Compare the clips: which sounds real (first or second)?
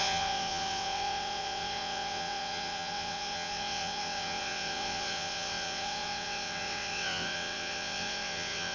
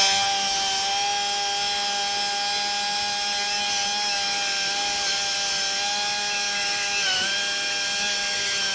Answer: second